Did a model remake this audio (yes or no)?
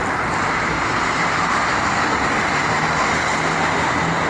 no